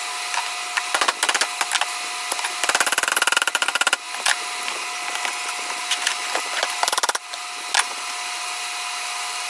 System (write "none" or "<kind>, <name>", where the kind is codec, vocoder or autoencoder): none